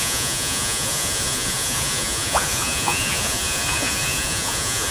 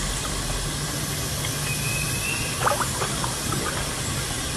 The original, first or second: second